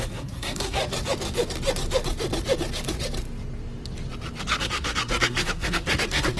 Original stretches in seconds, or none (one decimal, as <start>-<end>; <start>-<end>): 0.8-4.6